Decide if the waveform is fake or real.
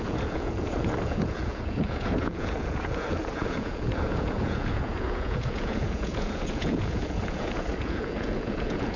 fake